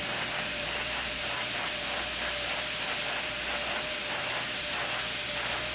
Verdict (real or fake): real